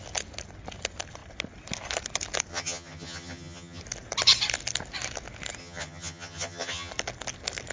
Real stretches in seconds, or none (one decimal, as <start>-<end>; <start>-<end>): 0.0-2.5; 3.8-5.6; 6.9-7.7